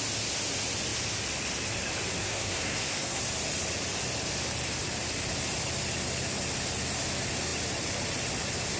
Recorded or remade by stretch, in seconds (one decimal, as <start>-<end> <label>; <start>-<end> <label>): 0.0-2.2 recorded; 2.2-3.2 remade; 3.2-8.8 recorded